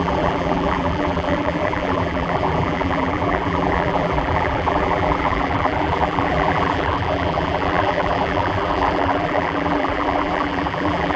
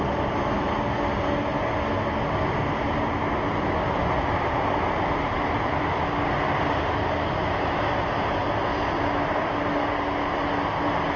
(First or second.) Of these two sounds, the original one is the second